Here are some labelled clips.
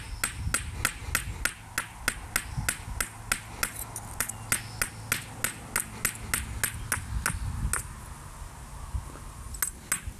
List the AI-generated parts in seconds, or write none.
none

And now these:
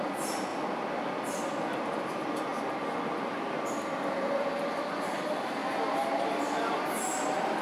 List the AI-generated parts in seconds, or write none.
none